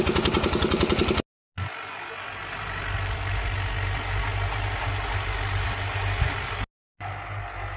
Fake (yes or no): no